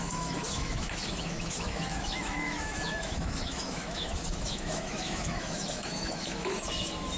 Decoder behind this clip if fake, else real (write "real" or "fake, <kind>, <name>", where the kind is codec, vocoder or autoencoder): fake, autoencoder, DAC-VAE